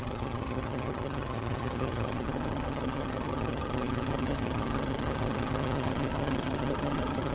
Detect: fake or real fake